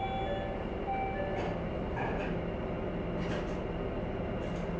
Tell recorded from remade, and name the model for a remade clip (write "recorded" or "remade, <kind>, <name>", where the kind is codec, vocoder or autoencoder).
recorded